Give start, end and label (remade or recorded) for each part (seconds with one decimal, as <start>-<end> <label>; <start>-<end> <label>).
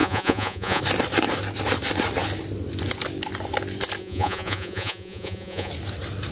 0.0-0.8 remade; 0.8-4.0 recorded; 4.0-5.7 remade; 5.7-6.3 recorded